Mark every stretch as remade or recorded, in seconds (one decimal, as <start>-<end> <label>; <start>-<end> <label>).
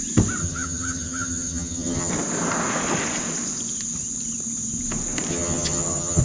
0.0-0.4 recorded; 0.4-2.1 remade; 2.1-5.3 recorded; 5.3-6.2 remade